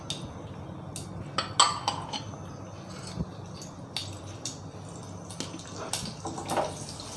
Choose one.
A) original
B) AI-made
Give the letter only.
A